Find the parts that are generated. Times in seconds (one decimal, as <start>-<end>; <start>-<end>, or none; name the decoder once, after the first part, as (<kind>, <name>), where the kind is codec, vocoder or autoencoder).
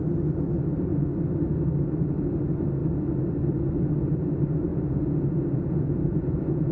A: 4.7-6.7 (vocoder, Vocos)